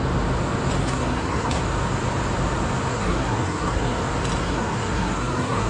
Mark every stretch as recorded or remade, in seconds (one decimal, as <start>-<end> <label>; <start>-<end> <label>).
0.0-0.8 recorded; 0.8-1.6 remade; 1.6-2.9 recorded; 2.9-4.0 remade; 4.0-4.4 recorded; 4.4-5.7 remade